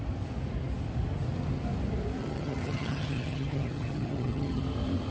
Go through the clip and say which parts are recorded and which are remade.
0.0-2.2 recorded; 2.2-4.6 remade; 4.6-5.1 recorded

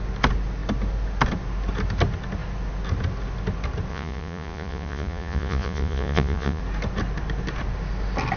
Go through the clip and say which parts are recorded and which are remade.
0.0-3.9 recorded; 3.9-6.6 remade; 6.6-8.4 recorded

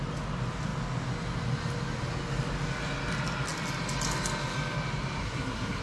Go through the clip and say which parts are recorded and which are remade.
0.0-5.2 recorded; 5.2-5.8 remade

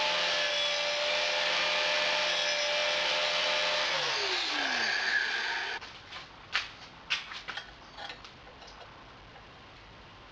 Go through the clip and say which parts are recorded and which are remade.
0.0-10.3 recorded

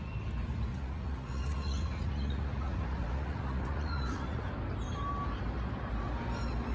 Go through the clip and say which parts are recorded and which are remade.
0.0-0.7 recorded; 0.7-4.4 remade; 4.4-6.7 recorded

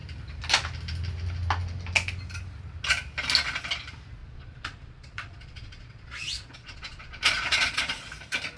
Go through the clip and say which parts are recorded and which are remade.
0.0-4.2 recorded; 4.2-8.1 remade; 8.1-8.6 recorded